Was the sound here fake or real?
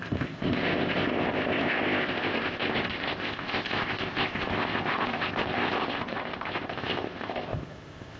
fake